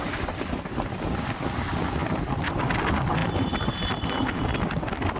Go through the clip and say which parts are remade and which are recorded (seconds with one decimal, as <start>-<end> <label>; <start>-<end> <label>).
0.0-5.2 recorded